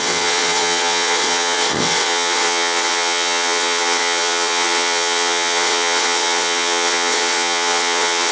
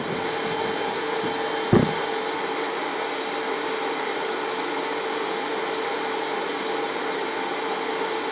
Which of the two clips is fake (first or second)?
first